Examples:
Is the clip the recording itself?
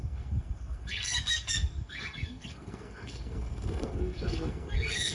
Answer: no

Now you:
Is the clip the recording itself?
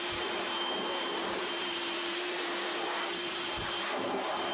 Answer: no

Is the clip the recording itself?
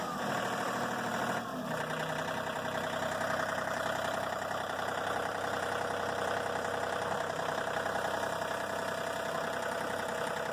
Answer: no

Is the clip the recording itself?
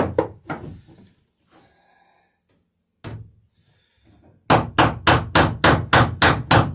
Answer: yes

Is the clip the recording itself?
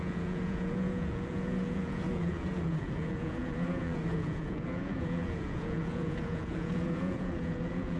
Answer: no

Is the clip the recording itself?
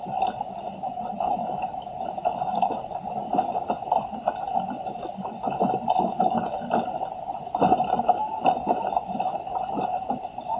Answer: yes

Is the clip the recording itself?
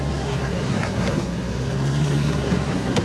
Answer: no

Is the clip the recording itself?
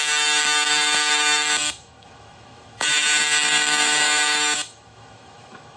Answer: no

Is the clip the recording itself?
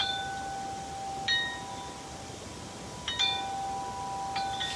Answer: yes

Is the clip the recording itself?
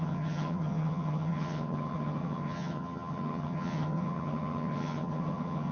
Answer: no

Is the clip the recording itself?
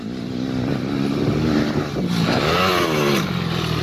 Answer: yes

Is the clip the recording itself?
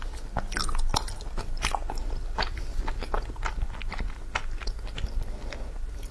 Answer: yes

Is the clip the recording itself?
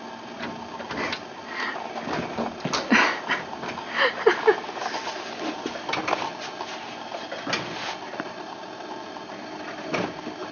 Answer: yes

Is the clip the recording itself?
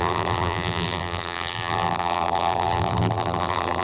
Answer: no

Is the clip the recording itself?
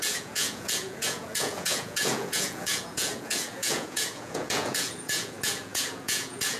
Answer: no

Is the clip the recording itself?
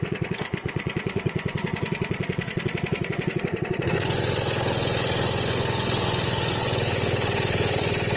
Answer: no